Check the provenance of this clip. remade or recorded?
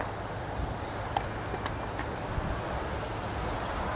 recorded